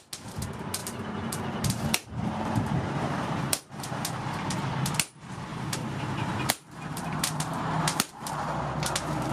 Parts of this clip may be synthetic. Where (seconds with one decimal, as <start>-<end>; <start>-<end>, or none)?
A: 0.8-3.7; 5.5-8.5